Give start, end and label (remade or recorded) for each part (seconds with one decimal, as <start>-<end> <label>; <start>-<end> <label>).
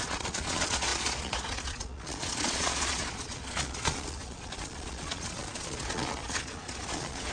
0.0-7.3 remade